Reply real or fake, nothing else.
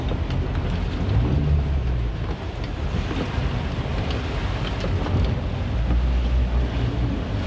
real